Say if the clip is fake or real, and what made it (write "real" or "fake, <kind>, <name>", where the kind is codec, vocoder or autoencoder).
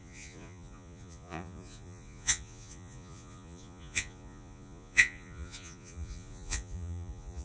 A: fake, vocoder, Vocos